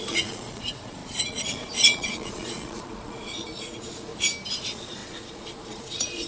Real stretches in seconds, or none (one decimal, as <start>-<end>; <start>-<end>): 4.1-4.6